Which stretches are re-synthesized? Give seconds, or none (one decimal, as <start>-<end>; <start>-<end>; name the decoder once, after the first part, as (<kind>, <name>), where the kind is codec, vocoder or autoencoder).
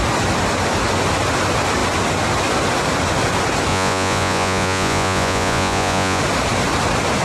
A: 3.7-6.2 (vocoder, Vocos)